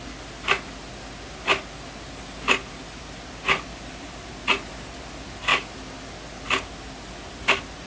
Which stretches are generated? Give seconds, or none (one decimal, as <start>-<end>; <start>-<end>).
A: 2.6-3.3; 3.7-4.3